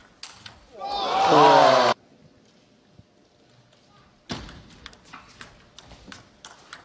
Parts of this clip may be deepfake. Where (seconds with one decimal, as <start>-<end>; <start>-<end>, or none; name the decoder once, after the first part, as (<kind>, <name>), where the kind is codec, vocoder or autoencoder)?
none